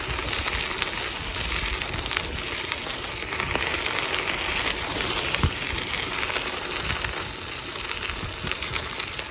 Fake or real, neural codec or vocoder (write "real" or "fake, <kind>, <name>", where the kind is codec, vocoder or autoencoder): real